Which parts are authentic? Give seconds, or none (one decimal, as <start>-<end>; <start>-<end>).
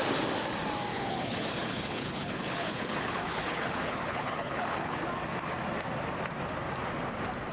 0.0-0.9; 5.0-7.5